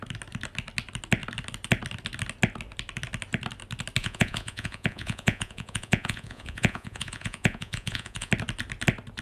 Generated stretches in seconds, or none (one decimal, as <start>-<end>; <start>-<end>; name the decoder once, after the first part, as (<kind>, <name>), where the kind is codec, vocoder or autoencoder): 4.0-8.3 (vocoder, Vocos)